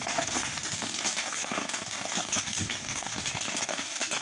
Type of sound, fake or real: fake